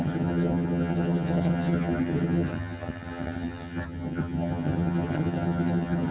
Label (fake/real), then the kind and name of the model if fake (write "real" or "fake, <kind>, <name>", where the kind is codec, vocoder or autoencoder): fake, vocoder, HiFi-GAN